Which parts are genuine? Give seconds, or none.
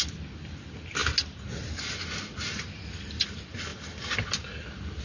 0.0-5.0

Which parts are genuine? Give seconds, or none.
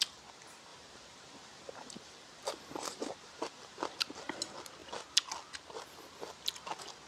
0.0-0.7; 4.0-7.1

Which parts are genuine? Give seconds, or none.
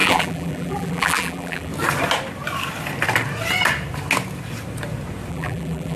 1.7-5.3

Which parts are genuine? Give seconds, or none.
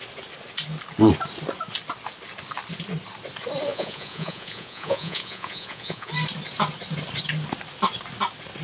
0.0-3.7; 6.1-8.6